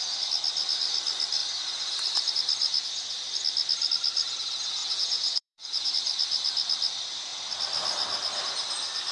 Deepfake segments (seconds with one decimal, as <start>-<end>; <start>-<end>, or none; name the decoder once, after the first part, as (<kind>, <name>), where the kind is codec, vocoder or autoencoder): 4.8-5.9 (vocoder, Vocos)